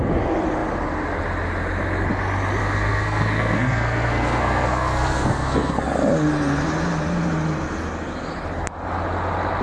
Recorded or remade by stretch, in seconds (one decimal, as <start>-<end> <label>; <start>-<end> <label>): 0.0-2.6 recorded; 2.6-5.7 remade; 5.7-9.6 recorded